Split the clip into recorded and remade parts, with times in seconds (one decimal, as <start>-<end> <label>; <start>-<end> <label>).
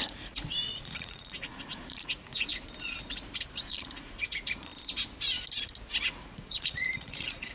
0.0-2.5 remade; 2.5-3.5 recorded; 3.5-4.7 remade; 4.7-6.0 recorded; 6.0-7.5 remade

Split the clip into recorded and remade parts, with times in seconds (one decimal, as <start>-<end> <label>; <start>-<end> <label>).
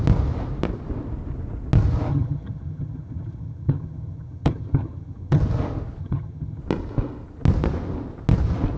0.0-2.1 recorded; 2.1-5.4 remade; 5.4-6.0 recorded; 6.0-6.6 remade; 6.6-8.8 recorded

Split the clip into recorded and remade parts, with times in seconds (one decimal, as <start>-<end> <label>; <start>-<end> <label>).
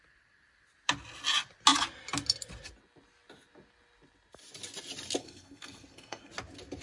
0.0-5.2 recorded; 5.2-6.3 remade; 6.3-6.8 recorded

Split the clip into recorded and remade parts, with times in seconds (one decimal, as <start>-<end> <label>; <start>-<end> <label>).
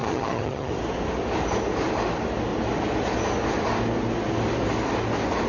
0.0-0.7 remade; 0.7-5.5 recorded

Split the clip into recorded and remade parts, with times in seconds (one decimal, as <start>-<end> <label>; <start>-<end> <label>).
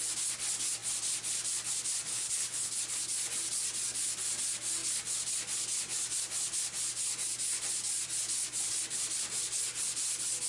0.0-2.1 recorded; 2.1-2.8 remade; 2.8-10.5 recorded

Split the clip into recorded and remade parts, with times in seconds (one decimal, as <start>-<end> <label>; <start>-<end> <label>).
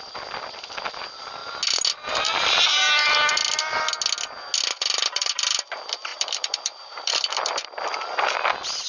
0.0-1.4 remade; 1.4-2.1 recorded; 2.1-2.7 remade; 2.7-4.8 recorded; 4.8-8.9 remade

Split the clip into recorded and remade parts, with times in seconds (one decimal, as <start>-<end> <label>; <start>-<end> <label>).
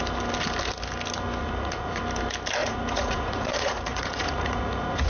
0.0-1.4 recorded; 1.4-2.0 remade; 2.0-2.6 recorded; 2.6-5.1 remade